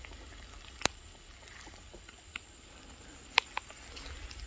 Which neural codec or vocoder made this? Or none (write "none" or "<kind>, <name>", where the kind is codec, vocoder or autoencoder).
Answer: none